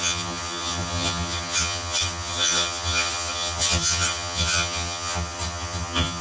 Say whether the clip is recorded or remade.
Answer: remade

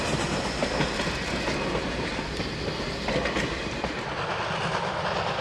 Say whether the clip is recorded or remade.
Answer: recorded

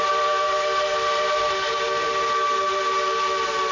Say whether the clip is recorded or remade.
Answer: recorded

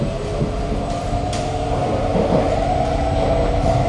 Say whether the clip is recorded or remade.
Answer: recorded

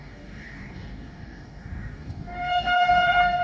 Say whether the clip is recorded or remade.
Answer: remade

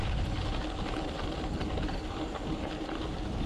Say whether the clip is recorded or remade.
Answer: recorded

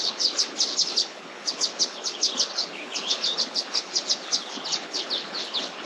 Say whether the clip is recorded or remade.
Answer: remade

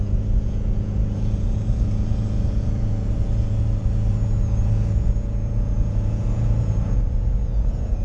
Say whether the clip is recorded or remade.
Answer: remade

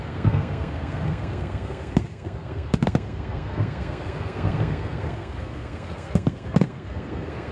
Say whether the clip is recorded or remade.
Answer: remade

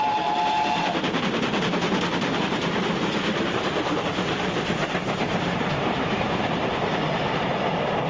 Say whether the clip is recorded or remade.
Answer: remade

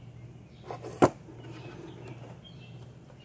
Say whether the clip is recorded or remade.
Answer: recorded